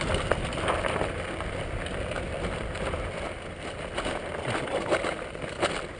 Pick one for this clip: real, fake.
real